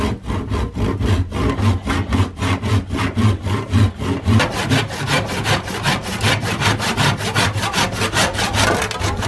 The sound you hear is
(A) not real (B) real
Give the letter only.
B